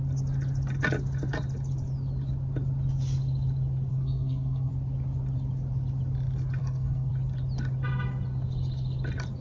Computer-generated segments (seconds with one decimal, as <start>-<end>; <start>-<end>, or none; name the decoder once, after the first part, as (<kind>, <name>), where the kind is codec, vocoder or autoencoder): 3.9-4.7 (codec, SNAC); 6.6-7.1